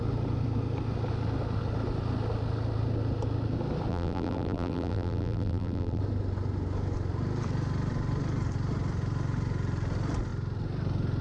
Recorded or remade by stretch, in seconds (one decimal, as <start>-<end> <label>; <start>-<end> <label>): 0.0-3.9 recorded; 3.9-6.0 remade; 6.0-11.2 recorded